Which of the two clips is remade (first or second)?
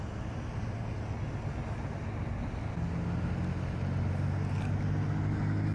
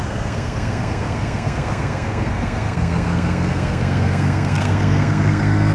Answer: second